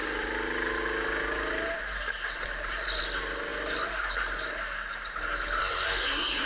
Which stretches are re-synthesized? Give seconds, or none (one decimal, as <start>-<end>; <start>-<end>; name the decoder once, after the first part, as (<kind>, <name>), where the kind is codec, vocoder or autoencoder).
5.6-6.5 (codec, SNAC)